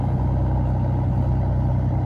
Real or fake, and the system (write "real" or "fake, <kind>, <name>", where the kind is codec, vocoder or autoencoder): real